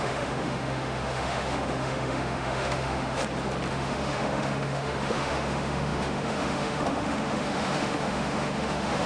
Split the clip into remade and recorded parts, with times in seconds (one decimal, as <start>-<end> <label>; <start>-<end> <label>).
0.0-3.2 remade; 3.2-3.7 recorded; 3.7-9.1 remade